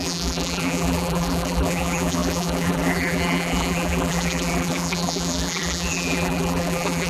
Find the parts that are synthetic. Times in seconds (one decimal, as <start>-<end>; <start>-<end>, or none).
0.0-7.1